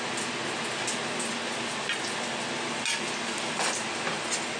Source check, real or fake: real